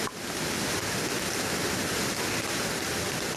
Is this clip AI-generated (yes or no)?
no